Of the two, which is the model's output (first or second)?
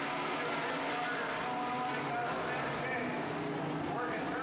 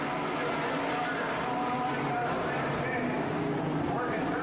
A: second